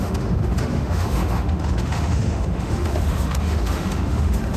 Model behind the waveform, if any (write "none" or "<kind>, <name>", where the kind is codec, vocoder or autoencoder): autoencoder, DAC-VAE